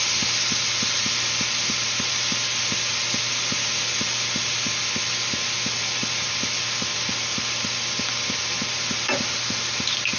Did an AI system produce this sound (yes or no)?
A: no